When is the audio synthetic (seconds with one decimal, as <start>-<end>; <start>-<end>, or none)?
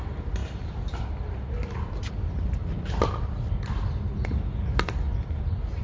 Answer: none